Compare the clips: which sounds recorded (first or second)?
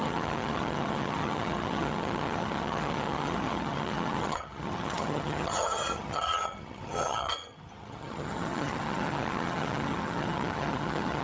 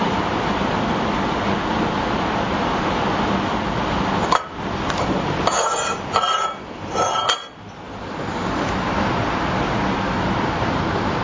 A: second